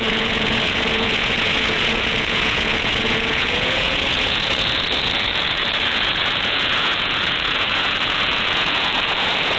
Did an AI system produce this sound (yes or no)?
yes